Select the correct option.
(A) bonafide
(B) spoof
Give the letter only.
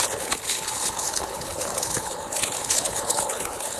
B